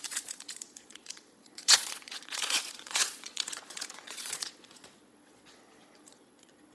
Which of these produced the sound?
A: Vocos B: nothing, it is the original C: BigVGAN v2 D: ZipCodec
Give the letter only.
A